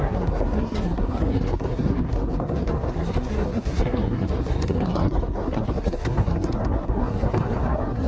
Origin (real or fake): fake